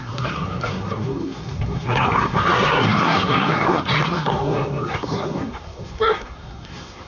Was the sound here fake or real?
fake